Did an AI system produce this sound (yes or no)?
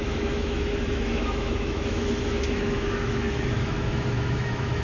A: yes